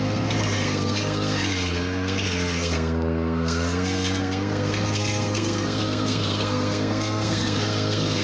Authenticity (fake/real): fake